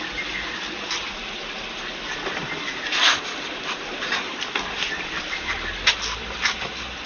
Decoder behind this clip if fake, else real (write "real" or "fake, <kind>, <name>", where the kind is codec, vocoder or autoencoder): real